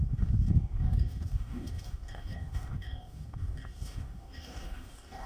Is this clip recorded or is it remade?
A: remade